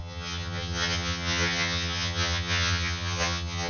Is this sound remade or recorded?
remade